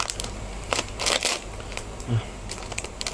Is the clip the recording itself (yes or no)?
no